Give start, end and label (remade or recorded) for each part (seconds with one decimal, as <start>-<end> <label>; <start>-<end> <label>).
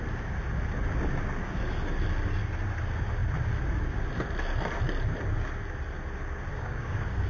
0.0-1.4 recorded; 1.4-2.0 remade; 2.0-6.5 recorded; 6.5-7.3 remade